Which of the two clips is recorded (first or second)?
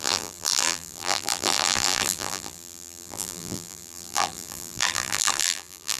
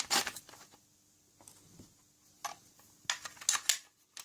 second